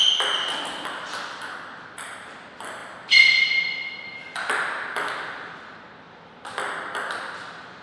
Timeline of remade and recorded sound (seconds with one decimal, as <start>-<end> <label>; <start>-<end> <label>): 0.0-7.8 recorded